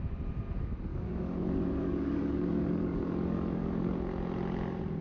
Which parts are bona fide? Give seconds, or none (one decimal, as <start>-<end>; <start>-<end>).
0.0-0.9; 3.9-5.0